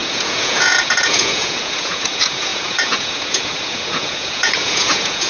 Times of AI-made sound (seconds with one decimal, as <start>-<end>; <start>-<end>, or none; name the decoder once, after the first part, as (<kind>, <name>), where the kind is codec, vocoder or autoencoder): 0.0-5.3 (vocoder, Vocos)